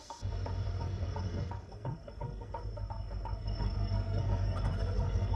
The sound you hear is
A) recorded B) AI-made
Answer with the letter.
B